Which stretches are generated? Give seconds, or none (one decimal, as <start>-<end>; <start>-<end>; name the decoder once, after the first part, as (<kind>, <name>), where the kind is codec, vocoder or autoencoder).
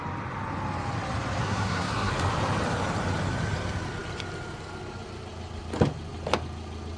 1.4-2.1 (codec, SNAC)